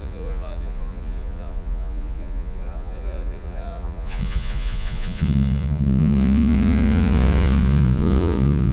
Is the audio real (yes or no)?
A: no